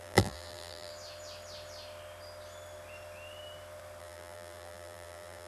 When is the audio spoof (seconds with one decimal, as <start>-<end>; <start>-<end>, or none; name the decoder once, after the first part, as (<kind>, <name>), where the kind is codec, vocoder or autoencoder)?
0.0-0.9 (vocoder, BigVGAN v2); 4.0-5.5